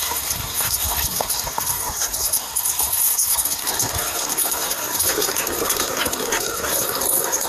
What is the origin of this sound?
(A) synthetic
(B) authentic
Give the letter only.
A